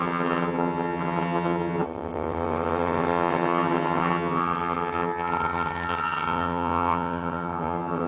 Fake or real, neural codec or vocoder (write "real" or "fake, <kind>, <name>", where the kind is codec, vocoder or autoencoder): fake, vocoder, HiFi-GAN